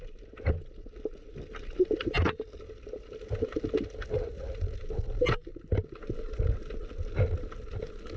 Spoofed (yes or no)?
no